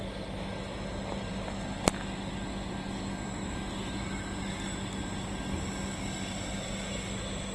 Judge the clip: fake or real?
real